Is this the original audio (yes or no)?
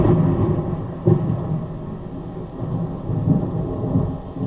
yes